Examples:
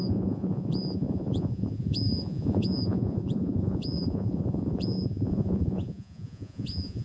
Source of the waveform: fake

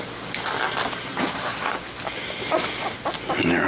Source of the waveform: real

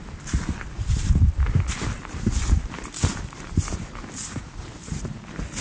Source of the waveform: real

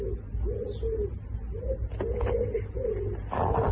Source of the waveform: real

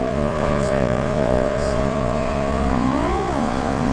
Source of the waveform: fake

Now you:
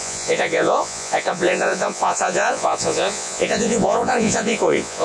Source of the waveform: fake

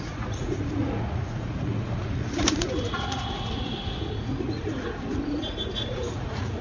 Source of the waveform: fake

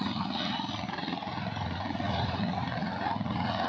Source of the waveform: fake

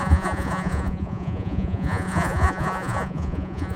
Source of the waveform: fake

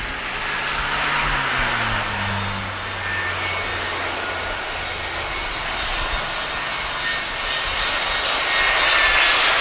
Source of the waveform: real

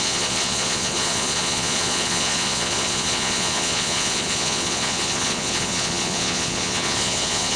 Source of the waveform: fake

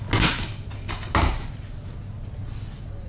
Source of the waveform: real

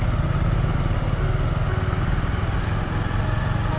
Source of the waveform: real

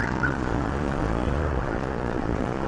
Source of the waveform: fake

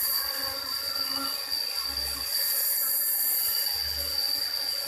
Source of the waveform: real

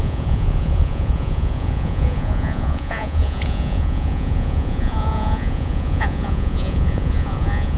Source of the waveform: fake